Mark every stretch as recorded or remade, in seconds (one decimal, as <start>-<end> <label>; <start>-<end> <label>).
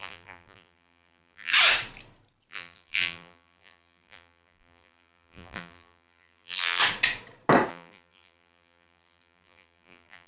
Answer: 0.0-1.5 remade; 1.5-2.5 recorded; 2.5-6.8 remade; 6.8-7.7 recorded; 7.7-10.3 remade